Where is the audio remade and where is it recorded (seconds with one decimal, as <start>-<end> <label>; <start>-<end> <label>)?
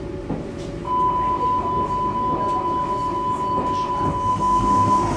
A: 0.0-4.3 recorded; 4.3-5.2 remade